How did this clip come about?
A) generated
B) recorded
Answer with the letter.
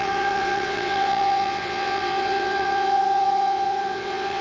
A